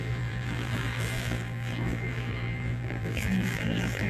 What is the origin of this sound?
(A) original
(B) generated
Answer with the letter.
B